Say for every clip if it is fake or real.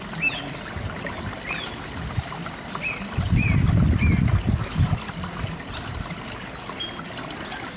real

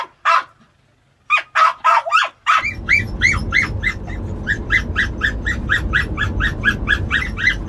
real